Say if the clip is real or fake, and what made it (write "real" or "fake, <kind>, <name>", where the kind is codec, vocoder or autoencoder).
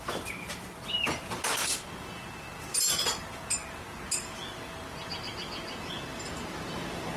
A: real